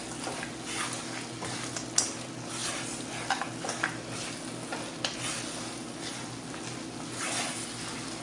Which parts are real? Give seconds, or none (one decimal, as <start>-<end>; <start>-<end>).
0.0-8.2